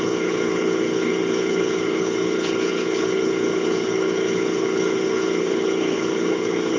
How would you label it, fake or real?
fake